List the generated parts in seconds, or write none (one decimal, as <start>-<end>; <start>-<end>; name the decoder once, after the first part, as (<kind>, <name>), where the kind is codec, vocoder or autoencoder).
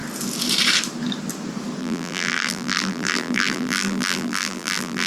1.8-5.1 (vocoder, BigVGAN v2)